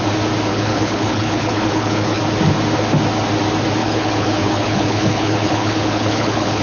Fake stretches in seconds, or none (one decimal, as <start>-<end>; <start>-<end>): 0.5-2.2; 3.8-6.6

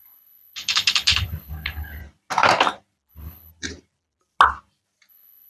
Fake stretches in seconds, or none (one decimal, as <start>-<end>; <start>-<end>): 0.0-2.0; 3.1-3.5; 5.1-5.5

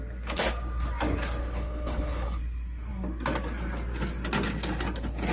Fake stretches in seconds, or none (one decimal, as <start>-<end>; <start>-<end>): 1.4-2.4

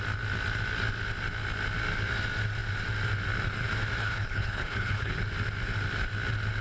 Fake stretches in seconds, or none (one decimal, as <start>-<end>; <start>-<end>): 4.0-5.2

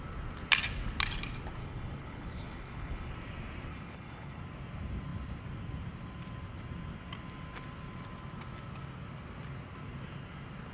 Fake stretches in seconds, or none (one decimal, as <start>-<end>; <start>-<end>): 1.6-3.1; 3.7-4.4